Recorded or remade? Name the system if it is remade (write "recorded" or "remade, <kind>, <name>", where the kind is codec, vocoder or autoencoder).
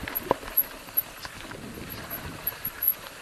recorded